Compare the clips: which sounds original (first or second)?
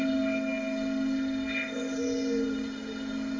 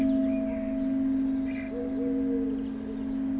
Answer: second